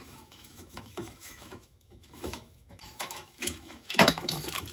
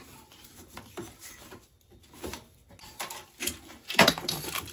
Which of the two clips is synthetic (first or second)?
first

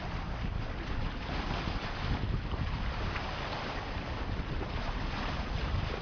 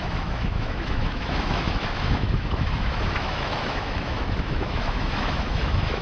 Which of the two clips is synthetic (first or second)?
second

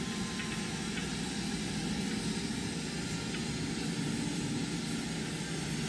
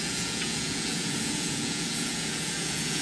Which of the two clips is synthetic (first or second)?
second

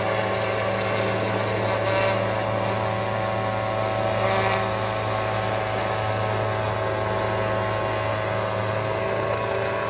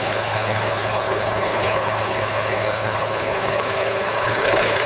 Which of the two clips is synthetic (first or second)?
second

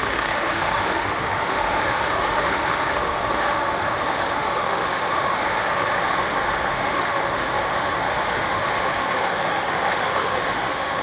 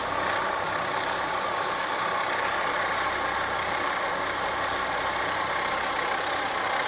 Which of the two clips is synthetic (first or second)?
first